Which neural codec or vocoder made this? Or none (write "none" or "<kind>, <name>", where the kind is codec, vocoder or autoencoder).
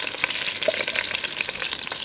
none